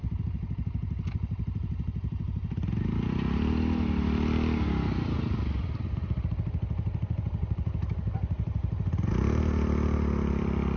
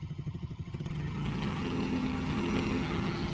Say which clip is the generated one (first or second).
second